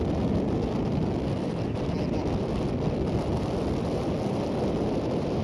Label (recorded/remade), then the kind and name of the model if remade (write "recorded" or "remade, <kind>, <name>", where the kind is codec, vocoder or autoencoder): recorded